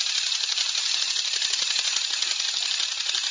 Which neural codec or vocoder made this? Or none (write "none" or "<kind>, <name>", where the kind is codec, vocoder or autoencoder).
none